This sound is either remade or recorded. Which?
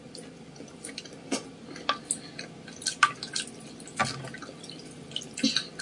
recorded